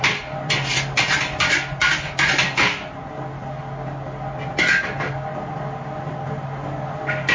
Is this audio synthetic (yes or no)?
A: no